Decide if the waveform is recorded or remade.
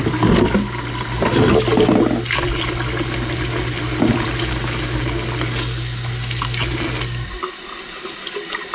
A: recorded